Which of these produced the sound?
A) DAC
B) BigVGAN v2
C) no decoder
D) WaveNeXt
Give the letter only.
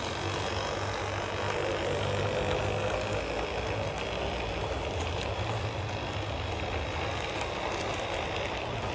C